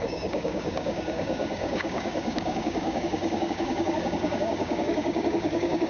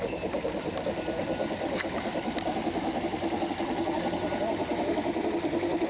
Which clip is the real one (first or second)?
second